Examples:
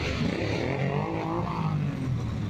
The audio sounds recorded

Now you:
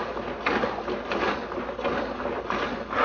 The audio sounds recorded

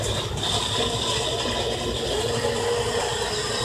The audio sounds recorded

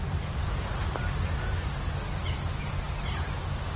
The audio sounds recorded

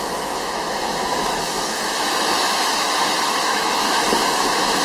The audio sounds remade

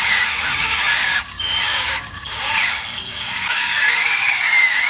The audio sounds remade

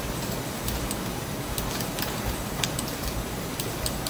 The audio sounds remade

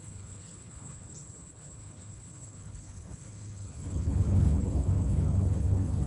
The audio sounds remade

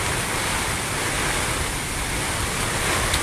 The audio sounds recorded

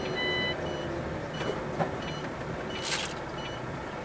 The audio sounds recorded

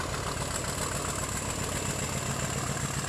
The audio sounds recorded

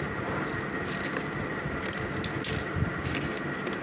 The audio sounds recorded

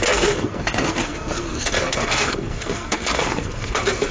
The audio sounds remade